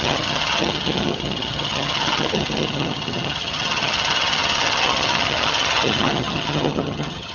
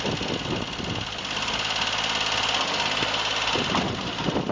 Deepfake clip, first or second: first